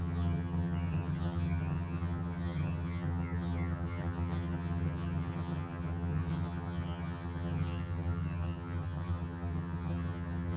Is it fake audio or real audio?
fake